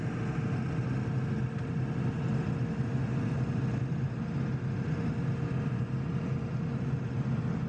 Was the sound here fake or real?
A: real